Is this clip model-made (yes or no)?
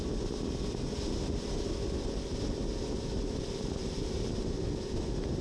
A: no